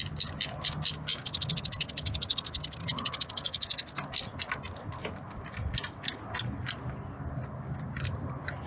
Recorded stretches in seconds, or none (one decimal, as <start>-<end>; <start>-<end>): 0.0-8.7